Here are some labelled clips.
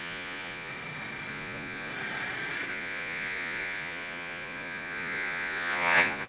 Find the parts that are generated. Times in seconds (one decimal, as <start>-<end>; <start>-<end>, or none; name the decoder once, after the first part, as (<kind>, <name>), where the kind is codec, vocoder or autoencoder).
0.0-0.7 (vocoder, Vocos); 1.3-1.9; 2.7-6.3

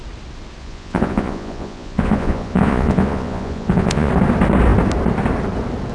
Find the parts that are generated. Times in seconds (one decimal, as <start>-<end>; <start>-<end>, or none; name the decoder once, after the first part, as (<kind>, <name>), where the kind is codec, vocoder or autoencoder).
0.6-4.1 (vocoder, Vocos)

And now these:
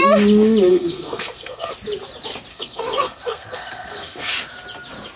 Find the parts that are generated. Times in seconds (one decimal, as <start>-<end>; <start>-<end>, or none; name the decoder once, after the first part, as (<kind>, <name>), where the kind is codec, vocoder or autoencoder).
0.7-1.7 (codec, SNAC); 2.5-4.3

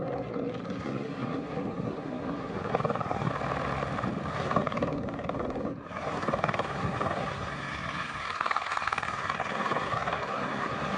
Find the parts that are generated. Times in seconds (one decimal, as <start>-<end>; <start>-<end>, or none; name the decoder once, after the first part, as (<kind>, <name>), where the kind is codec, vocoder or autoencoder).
0.0-3.3 (codec, SNAC); 4.3-11.0

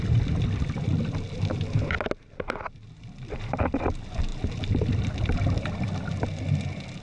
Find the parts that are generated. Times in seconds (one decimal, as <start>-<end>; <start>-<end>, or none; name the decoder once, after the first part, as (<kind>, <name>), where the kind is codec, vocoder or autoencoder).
none

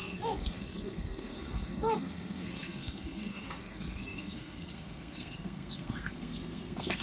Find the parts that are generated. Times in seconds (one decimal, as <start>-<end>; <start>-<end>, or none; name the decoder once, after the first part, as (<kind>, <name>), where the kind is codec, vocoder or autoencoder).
0.0-7.0 (codec, SNAC)